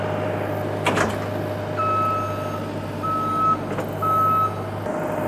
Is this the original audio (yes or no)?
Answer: yes